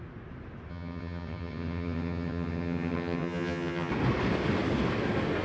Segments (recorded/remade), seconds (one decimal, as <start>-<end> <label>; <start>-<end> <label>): 0.0-0.7 recorded; 0.7-3.9 remade; 3.9-5.4 recorded